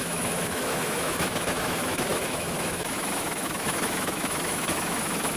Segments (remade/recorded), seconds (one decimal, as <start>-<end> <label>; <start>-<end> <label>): 0.0-5.4 remade